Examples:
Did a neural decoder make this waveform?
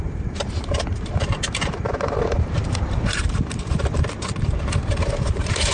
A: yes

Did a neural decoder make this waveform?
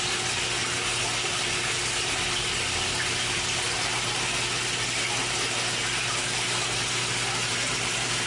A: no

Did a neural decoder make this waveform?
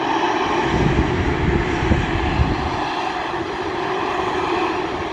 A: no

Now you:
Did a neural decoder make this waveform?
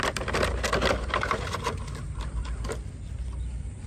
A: no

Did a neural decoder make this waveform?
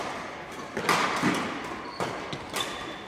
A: no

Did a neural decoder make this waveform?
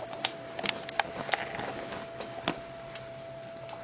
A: no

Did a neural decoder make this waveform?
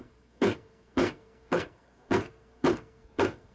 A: yes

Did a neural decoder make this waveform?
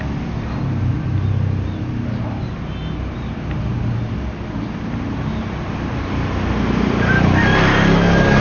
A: no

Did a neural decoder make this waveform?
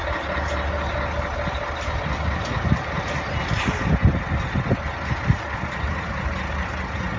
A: no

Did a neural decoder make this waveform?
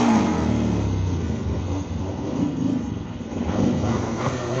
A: yes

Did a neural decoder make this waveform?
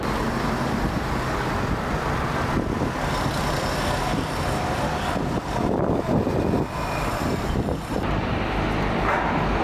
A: no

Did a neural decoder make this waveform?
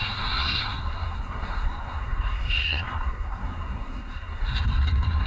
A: yes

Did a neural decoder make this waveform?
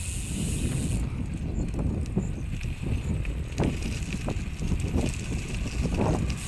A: no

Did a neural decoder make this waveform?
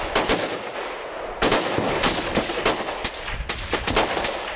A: no